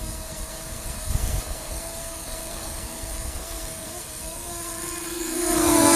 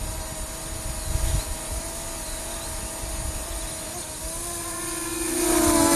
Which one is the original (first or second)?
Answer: second